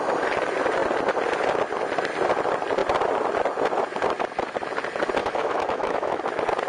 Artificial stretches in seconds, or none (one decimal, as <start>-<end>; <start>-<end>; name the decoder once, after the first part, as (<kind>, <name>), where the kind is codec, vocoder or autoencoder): 5.2-6.2 (autoencoder, DAC-VAE)